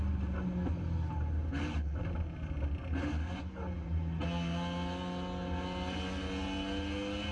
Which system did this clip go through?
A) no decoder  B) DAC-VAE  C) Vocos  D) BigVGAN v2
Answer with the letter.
A